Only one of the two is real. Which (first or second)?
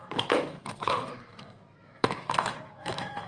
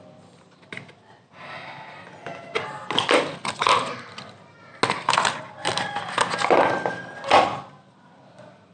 second